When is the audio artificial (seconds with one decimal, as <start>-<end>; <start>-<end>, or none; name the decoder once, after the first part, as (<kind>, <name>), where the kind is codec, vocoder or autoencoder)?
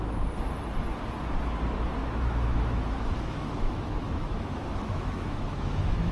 2.0-6.1 (autoencoder, DAC-VAE)